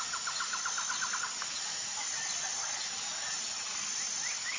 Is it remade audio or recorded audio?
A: recorded